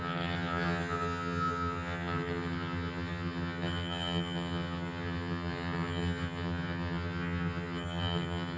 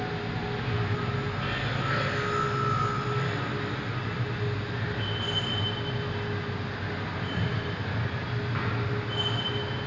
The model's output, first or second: first